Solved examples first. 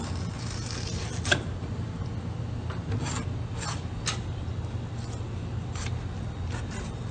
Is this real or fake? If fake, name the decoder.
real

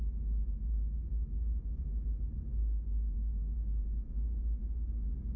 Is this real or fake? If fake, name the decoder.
real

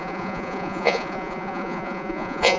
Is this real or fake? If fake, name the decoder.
fake, vocoder, Vocos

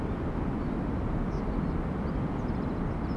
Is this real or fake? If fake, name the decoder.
real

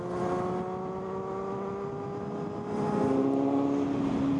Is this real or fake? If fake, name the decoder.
real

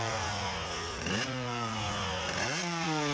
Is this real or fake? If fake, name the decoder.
fake, vocoder, Vocos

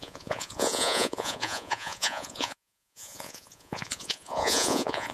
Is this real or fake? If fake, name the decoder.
fake, vocoder, Vocos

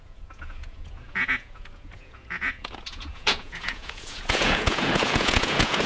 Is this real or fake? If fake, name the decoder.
fake, vocoder, Vocos